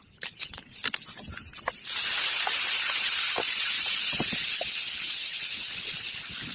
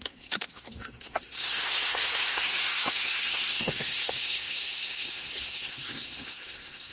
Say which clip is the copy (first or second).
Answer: second